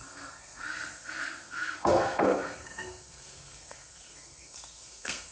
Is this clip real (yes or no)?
no